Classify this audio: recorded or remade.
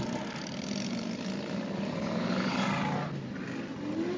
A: recorded